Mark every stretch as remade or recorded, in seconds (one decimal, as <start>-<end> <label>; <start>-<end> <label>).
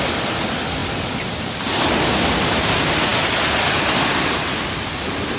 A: 0.0-5.4 recorded